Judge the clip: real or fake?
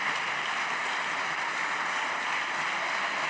real